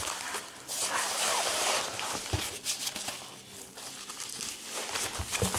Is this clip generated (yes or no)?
yes